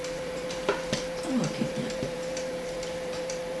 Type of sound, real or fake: fake